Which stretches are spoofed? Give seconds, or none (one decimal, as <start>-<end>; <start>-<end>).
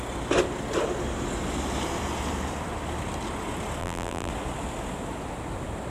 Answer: 3.8-4.3